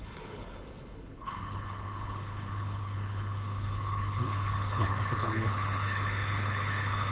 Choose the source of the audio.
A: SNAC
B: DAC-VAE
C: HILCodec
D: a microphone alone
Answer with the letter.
C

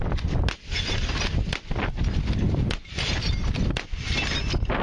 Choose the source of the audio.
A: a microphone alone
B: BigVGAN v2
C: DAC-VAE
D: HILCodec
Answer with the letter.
A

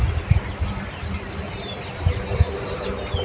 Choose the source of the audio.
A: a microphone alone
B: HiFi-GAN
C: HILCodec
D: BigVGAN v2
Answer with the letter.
A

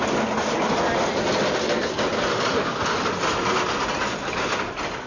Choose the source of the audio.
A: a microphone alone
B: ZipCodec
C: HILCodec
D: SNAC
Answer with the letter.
A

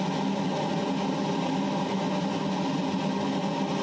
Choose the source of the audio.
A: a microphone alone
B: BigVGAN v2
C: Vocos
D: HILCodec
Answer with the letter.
A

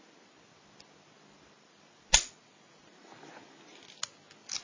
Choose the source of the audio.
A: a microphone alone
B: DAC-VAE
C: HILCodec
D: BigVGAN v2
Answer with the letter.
A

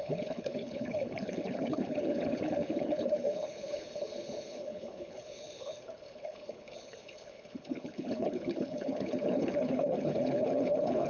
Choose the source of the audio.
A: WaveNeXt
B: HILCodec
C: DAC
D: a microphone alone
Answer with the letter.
B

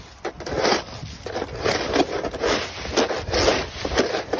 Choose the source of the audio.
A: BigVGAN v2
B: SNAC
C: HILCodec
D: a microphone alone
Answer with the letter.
D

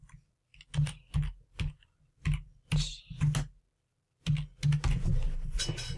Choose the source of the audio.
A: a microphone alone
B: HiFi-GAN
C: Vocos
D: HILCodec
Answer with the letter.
A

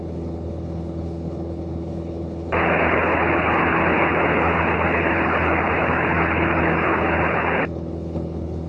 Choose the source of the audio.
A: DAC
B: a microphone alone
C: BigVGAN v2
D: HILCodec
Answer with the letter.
D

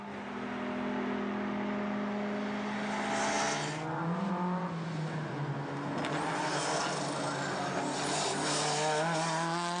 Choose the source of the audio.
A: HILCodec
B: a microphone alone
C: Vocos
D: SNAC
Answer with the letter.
B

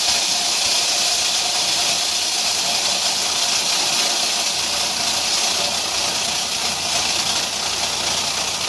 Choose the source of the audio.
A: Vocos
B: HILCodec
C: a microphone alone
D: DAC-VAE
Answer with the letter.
C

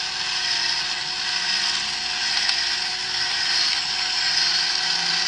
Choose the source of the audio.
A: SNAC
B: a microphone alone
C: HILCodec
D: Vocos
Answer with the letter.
B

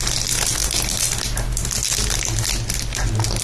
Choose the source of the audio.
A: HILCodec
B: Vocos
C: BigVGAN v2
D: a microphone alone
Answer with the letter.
D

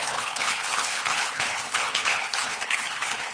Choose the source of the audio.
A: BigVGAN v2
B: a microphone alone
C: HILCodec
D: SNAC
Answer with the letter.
C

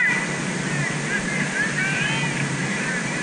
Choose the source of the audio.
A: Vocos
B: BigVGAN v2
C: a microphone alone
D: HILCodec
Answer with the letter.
C